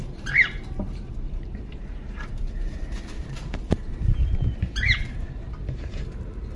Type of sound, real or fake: fake